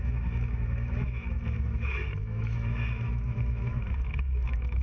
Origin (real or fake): fake